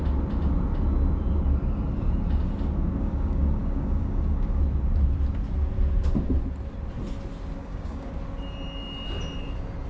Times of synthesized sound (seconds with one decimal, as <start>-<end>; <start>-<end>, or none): 3.0-4.6; 7.6-8.1